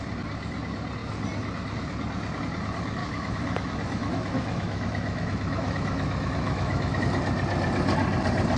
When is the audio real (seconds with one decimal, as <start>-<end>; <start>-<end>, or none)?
0.0-3.0; 7.0-8.6